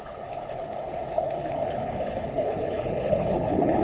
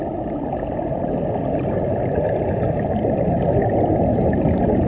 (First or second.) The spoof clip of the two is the first